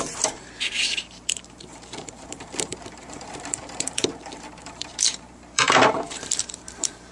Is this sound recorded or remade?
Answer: remade